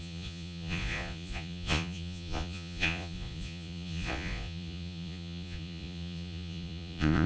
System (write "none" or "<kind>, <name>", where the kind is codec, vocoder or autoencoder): vocoder, Vocos